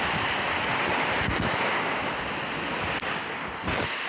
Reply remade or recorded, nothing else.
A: recorded